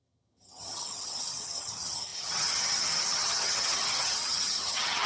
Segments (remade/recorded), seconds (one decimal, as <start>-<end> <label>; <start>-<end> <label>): 0.0-5.1 remade